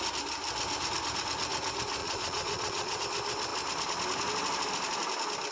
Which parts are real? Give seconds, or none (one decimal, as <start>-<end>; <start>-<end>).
0.0-2.0; 3.0-5.5